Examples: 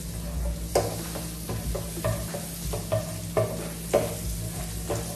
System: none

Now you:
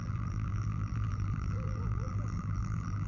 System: vocoder, BigVGAN v2